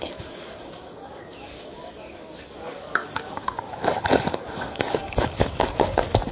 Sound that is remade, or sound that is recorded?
remade